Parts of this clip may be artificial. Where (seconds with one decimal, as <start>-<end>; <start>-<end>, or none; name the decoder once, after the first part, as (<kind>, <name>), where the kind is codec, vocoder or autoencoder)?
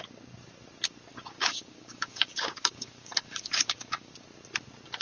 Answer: 1.1-4.1 (codec, DAC)